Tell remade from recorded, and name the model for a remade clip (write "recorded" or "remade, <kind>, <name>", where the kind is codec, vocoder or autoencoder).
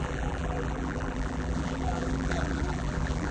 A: remade, vocoder, BigVGAN v2